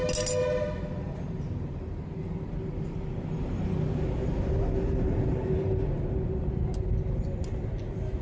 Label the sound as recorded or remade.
recorded